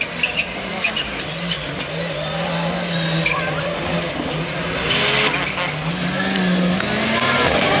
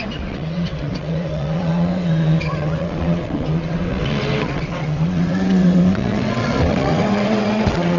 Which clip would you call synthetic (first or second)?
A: second